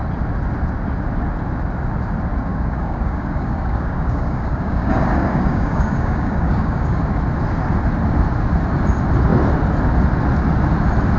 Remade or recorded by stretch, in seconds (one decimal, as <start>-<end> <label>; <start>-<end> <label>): 0.0-2.5 recorded; 2.5-7.0 remade; 7.0-11.2 recorded